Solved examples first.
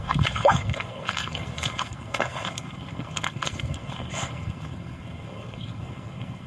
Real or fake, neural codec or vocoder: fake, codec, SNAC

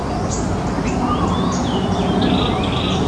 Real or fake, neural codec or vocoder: real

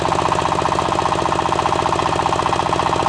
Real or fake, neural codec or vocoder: real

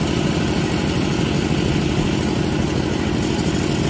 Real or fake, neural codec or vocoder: real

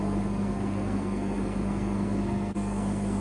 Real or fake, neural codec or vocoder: fake, codec, SNAC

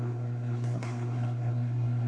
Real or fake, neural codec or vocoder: fake, codec, SNAC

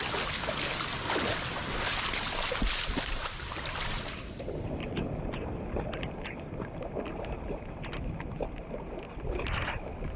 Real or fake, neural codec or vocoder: real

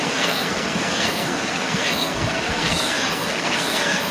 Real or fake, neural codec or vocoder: fake, codec, SNAC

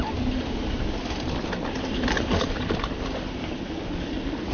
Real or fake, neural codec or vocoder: real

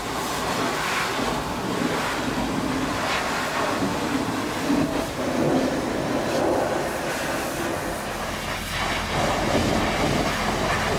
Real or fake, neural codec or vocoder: real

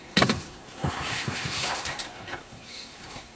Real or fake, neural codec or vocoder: fake, codec, SNAC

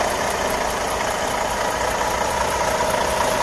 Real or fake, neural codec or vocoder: real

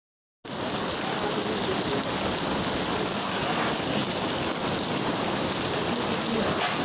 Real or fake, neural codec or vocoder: real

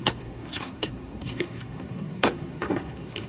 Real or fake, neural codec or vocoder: fake, codec, SNAC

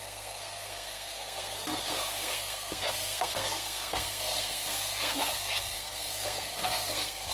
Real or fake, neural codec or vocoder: fake, codec, SNAC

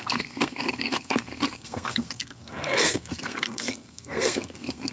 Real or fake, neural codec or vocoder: fake, codec, SNAC